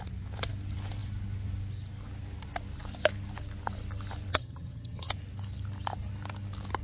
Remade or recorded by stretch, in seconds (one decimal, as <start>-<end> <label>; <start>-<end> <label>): 0.0-4.3 recorded; 4.3-5.1 remade; 5.1-6.8 recorded